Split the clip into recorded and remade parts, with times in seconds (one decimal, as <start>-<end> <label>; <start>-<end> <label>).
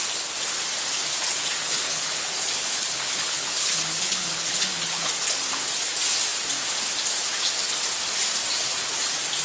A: 0.0-1.6 recorded; 1.6-5.1 remade; 5.1-9.4 recorded